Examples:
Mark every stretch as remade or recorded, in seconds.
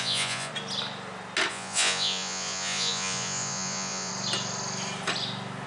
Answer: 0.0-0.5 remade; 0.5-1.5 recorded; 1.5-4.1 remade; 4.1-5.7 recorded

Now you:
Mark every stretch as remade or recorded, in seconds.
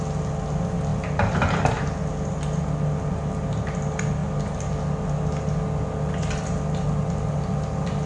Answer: 0.0-8.1 recorded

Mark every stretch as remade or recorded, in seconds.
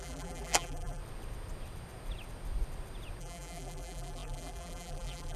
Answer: 0.0-1.0 remade; 1.0-3.2 recorded; 3.2-5.4 remade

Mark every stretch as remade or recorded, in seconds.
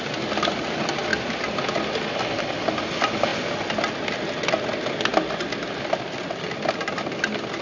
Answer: 0.0-7.6 recorded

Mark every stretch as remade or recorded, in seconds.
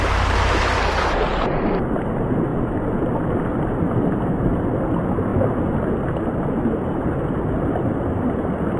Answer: 0.0-8.8 recorded